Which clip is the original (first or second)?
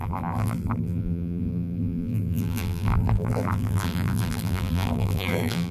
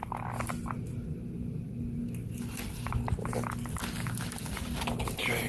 second